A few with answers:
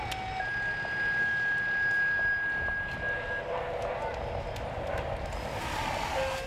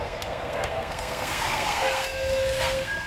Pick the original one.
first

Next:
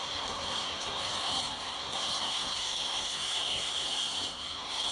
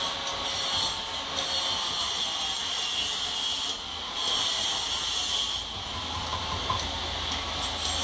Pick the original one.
second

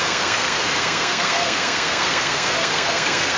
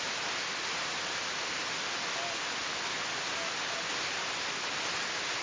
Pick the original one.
second